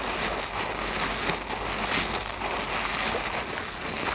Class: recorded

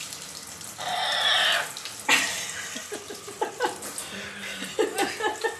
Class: recorded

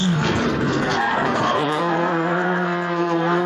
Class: remade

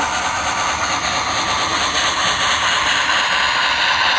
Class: recorded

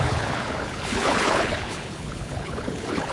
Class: remade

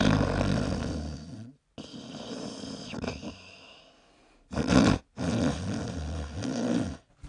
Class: recorded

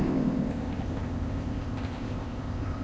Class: remade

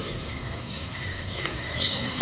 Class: remade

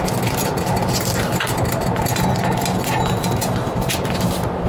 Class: recorded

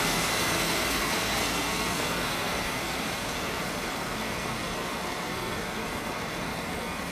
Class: remade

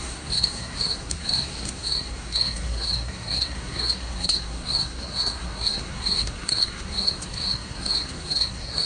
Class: remade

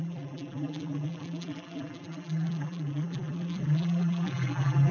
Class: remade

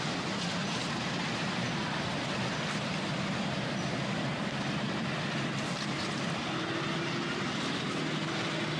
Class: recorded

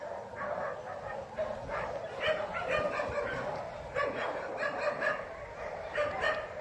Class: recorded